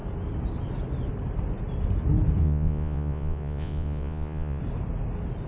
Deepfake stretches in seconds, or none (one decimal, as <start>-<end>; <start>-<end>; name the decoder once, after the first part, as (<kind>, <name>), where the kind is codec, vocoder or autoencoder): 2.4-4.6 (vocoder, Vocos)